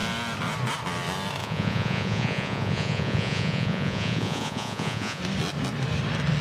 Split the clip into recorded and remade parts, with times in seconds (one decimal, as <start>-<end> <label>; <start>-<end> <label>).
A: 0.0-1.4 recorded; 1.4-5.2 remade; 5.2-6.4 recorded